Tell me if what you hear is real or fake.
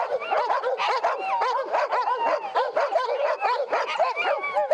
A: real